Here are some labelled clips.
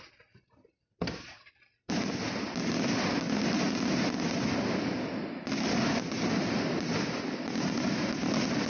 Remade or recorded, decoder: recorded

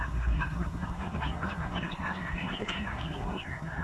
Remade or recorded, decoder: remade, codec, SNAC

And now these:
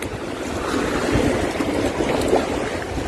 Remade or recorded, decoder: recorded